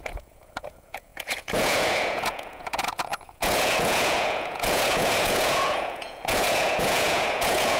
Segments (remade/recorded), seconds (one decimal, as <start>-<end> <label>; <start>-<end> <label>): 0.0-7.8 remade